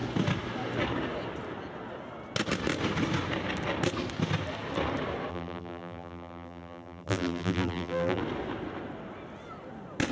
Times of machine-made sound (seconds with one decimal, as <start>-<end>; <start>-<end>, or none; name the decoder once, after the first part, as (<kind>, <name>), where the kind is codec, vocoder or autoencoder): 5.3-8.2 (vocoder, BigVGAN v2)